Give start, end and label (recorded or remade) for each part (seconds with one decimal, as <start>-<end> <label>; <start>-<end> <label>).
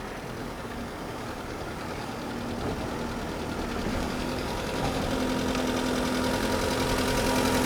0.0-0.4 recorded; 0.4-2.3 remade; 2.3-3.9 recorded; 3.9-5.0 remade; 5.0-7.7 recorded